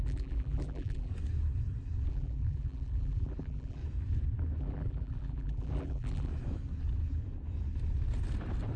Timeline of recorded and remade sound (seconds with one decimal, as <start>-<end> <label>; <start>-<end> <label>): 0.0-1.1 remade; 1.1-2.1 recorded; 2.1-3.8 remade; 3.8-4.6 recorded; 4.6-6.3 remade; 6.3-8.8 recorded